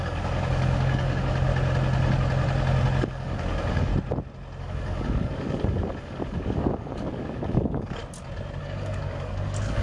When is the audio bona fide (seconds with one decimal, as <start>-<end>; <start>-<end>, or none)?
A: 1.5-3.0; 3.9-4.6; 8.0-8.6